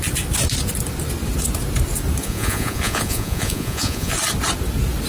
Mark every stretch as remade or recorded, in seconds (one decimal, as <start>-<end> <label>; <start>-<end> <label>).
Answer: 0.0-2.2 recorded; 2.2-4.1 remade; 4.1-5.1 recorded